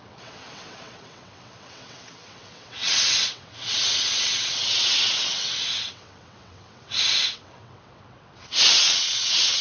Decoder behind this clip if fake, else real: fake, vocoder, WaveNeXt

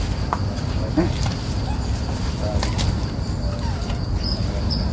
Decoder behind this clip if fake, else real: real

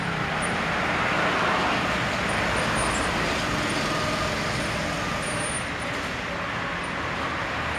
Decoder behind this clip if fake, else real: real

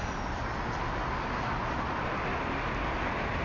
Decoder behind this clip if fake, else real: real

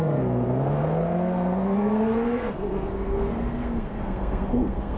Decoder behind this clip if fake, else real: fake, codec, SNAC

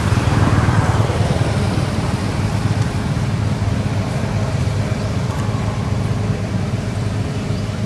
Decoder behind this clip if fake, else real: fake, vocoder, BigVGAN v2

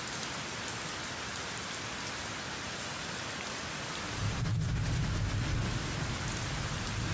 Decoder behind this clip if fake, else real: real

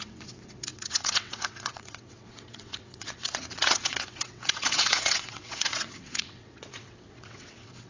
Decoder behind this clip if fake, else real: fake, vocoder, WaveNeXt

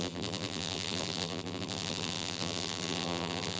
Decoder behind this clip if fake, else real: fake, vocoder, BigVGAN v2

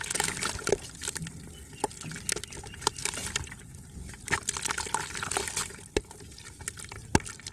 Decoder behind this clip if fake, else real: real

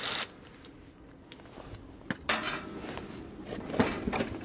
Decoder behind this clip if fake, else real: real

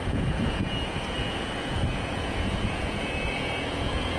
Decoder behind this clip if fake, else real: fake, vocoder, Vocos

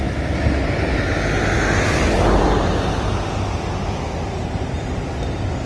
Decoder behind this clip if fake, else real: real